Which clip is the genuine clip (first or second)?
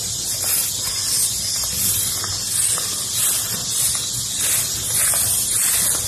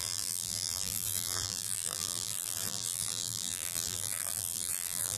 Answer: first